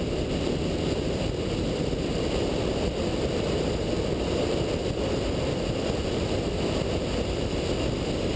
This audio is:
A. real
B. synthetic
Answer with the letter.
A